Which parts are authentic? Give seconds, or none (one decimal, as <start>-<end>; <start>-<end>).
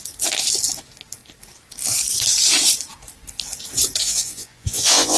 0.0-4.0